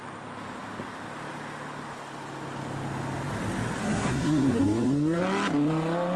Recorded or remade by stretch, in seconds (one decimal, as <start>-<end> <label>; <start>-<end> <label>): 0.0-3.8 recorded; 3.8-5.2 remade; 5.2-6.2 recorded